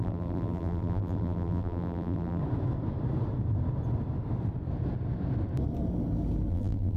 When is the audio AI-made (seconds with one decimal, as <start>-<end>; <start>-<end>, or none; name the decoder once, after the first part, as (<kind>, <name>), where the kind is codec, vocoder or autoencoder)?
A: 0.0-2.4 (vocoder, BigVGAN v2); 6.5-7.0